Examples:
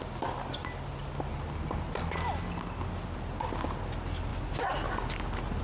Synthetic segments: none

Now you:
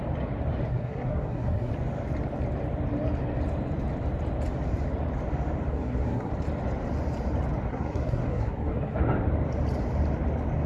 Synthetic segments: 0.7-1.7 (codec, SNAC); 5.7-6.3; 7.7-9.0